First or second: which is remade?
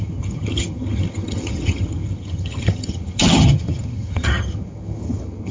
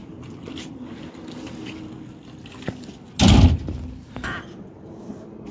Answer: first